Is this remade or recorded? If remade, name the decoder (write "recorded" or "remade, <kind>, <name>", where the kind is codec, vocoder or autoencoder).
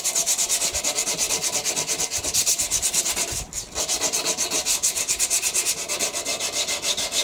recorded